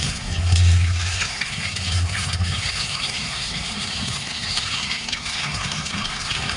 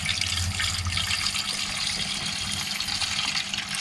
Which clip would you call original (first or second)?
second